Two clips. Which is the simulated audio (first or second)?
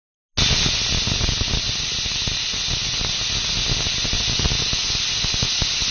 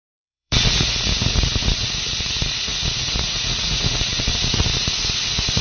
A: second